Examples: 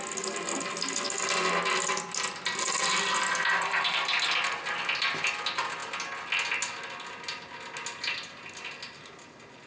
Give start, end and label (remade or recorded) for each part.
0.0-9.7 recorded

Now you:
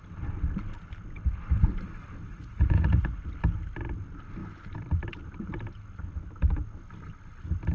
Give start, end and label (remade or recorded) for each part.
0.0-2.3 recorded; 2.3-3.2 remade; 3.2-7.7 recorded

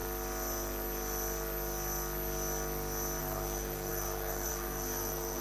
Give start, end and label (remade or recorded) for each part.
0.0-3.2 recorded; 3.2-5.4 remade

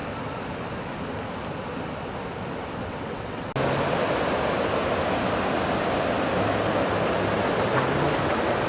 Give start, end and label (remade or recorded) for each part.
0.0-2.9 recorded; 2.9-3.5 remade; 3.5-8.7 recorded

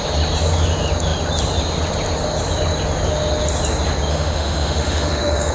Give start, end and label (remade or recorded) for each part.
0.0-4.1 recorded; 4.1-5.5 remade

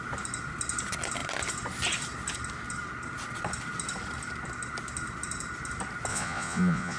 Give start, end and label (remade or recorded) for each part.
0.0-6.1 recorded; 6.1-7.0 remade